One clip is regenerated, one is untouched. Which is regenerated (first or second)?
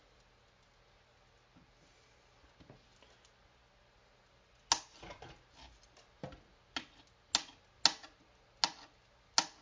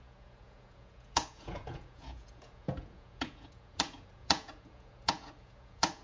second